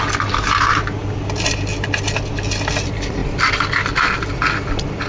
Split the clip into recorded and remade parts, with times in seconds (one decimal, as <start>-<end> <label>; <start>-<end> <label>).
0.0-5.1 recorded